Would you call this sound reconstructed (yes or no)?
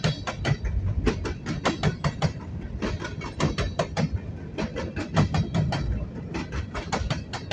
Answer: no